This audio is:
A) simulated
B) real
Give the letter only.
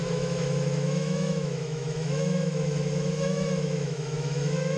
A